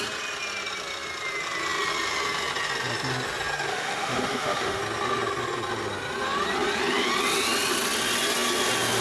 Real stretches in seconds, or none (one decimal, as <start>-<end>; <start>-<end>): 0.0-3.7; 4.8-9.0